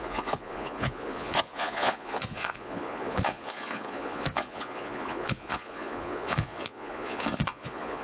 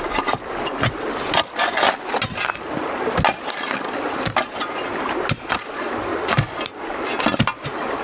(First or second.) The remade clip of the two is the first